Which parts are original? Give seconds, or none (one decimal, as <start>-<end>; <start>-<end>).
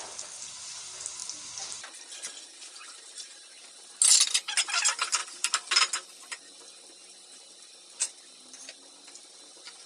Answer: 0.0-9.9